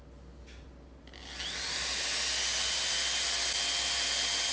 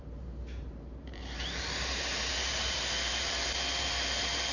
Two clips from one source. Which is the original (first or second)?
first